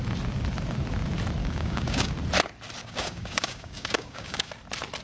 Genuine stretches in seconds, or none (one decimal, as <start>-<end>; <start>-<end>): 0.0-1.4; 2.1-2.8; 4.5-5.0